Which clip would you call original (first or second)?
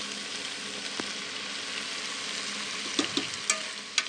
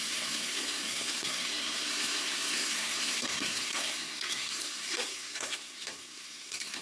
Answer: first